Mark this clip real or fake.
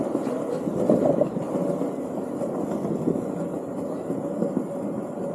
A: real